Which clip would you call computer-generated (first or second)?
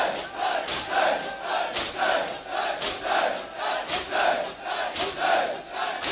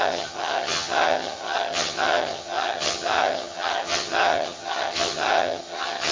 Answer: second